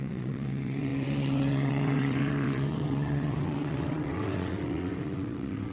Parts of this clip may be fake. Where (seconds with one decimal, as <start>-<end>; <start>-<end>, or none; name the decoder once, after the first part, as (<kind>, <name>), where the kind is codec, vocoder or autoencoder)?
0.0-5.7 (vocoder, WaveNeXt)